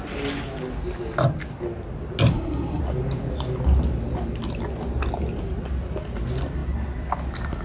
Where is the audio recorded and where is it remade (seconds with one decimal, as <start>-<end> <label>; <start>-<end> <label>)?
0.0-2.3 recorded; 2.3-2.8 remade; 2.8-7.6 recorded